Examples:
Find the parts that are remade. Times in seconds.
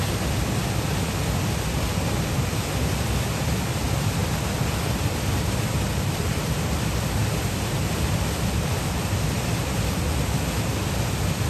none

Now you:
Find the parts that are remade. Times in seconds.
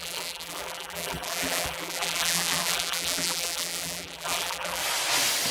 0.0-4.8 (vocoder, BigVGAN v2)